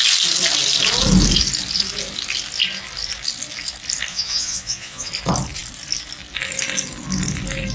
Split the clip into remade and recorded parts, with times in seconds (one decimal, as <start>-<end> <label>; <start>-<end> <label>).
0.0-4.1 recorded; 4.1-5.1 remade; 5.1-7.7 recorded